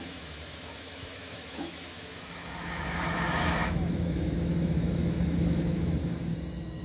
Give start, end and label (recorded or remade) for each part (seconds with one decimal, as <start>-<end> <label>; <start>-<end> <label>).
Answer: 0.0-6.3 remade; 6.3-6.8 recorded